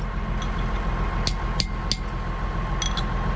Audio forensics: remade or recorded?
recorded